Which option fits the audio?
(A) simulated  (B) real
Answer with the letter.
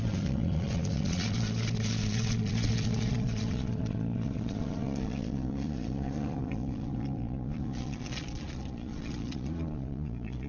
A